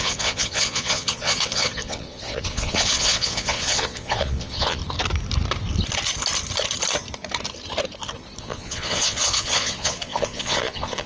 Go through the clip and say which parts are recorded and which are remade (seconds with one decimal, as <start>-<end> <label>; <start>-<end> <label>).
0.0-4.8 remade; 4.8-8.4 recorded; 8.4-11.1 remade